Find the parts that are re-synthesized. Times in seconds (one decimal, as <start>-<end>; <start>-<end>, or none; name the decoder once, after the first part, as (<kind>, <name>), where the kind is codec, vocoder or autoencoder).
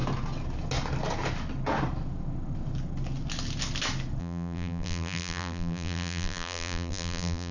4.2-7.5 (vocoder, BigVGAN v2)